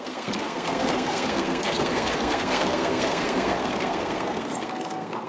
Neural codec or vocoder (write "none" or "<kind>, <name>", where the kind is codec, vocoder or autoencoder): codec, SNAC